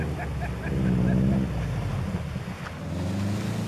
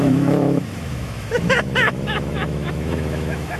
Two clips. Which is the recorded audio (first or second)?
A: first